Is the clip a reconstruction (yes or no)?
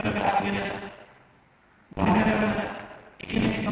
no